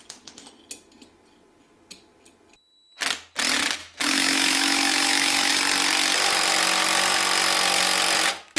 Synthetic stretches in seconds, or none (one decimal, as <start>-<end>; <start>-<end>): 3.8-5.5